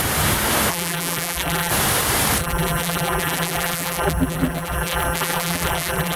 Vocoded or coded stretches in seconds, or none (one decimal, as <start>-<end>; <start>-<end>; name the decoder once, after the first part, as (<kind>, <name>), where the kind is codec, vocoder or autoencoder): 0.7-1.7 (vocoder, BigVGAN v2); 2.4-6.2